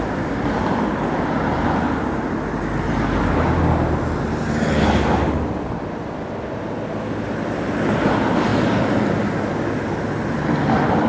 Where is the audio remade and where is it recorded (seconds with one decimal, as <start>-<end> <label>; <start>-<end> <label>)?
0.0-8.5 recorded; 8.5-9.0 remade; 9.0-11.1 recorded